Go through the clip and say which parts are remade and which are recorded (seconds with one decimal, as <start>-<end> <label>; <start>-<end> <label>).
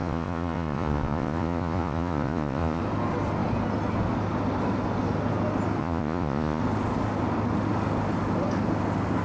0.0-2.8 remade; 2.8-5.8 recorded; 5.8-6.6 remade; 6.6-9.2 recorded